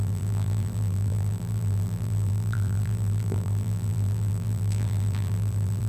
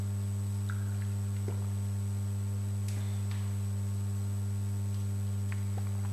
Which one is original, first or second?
second